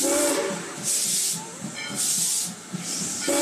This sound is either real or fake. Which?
real